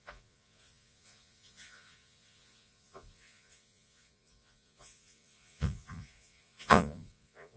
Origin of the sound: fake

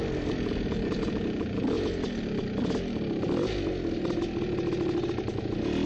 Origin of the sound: real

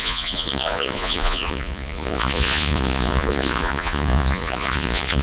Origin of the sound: fake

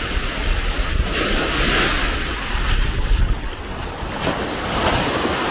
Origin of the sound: real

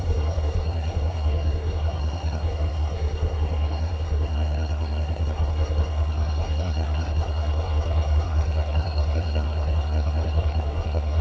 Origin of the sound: fake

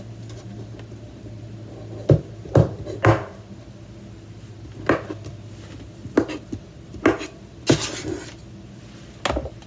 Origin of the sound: real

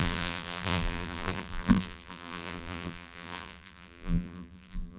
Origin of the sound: fake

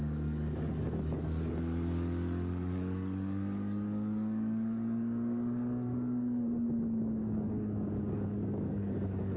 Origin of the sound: fake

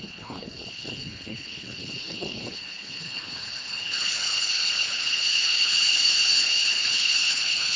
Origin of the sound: fake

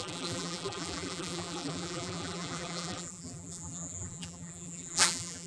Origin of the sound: fake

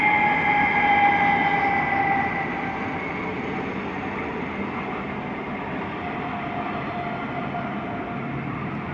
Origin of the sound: real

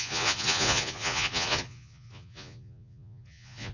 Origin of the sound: fake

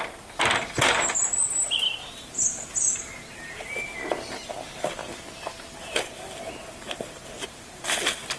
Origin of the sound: real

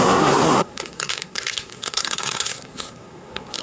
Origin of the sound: fake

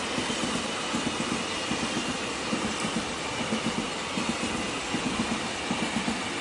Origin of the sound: real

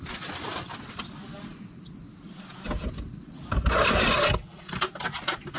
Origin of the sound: real